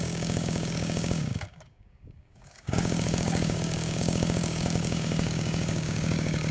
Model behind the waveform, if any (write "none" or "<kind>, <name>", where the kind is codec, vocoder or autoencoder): codec, DAC